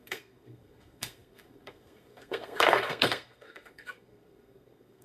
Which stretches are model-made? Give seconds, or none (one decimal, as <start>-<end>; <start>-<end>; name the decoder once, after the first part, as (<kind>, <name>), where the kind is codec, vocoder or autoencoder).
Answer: 0.0-5.0 (codec, SNAC)